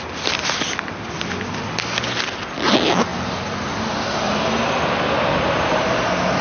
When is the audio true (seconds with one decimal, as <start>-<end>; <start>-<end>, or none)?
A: 0.0-6.4